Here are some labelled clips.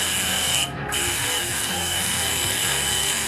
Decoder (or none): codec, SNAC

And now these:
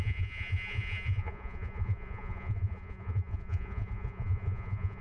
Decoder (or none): vocoder, Vocos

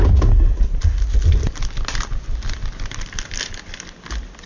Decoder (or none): none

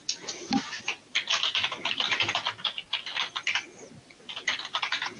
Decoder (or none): none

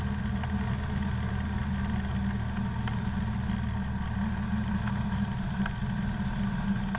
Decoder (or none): none